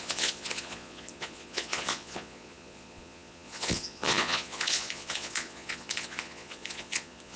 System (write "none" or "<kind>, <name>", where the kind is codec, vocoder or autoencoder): vocoder, Vocos